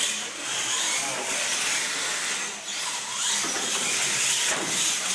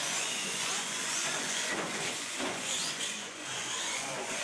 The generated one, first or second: second